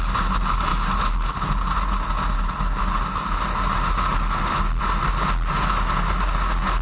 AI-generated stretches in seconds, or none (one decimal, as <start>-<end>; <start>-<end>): none